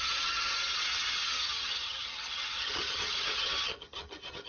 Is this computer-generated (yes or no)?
yes